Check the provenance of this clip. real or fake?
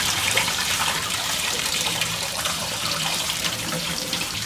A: fake